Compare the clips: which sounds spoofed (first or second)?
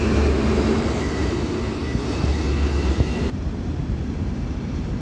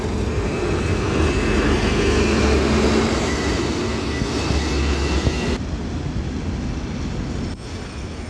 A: first